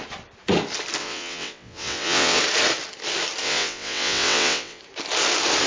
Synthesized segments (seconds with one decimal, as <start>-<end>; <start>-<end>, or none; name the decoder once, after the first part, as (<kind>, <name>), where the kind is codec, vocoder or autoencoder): 1.0-2.4 (vocoder, WaveNeXt); 3.4-4.8